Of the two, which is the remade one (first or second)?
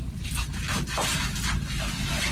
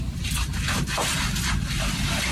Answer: second